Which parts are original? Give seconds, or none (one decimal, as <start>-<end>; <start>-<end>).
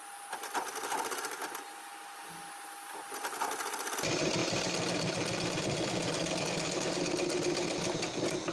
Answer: 0.0-4.4; 6.4-8.5